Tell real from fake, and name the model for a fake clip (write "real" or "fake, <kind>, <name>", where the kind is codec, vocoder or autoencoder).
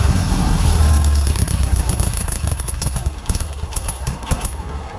fake, codec, SNAC